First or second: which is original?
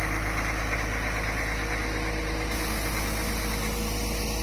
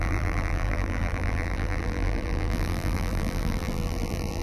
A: first